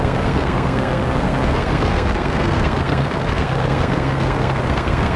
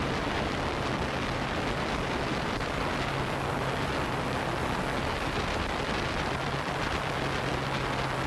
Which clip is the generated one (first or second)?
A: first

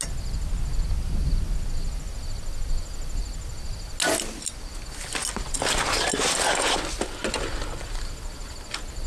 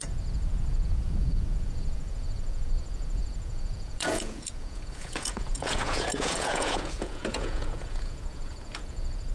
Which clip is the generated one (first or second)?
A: second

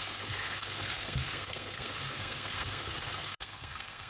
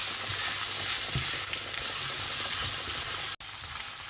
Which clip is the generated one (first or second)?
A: first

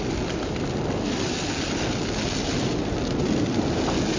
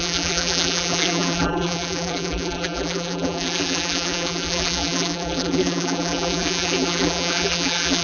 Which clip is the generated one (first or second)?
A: second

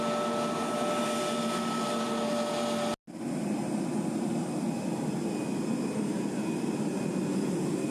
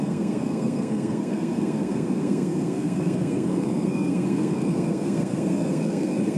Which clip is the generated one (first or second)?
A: second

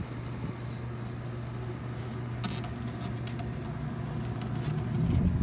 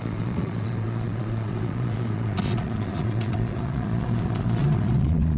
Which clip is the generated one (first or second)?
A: second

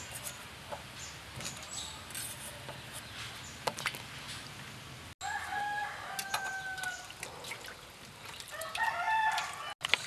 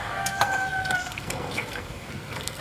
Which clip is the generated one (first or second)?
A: second